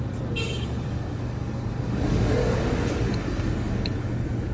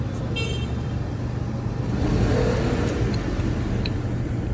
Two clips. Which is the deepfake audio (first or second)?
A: first